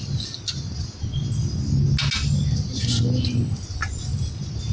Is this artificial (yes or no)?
no